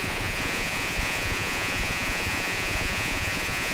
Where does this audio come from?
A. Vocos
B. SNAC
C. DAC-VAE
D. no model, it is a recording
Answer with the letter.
A